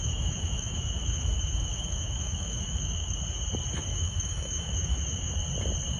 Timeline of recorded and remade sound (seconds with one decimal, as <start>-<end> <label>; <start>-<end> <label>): 0.0-3.2 remade; 3.2-3.9 recorded; 3.9-5.3 remade; 5.3-6.0 recorded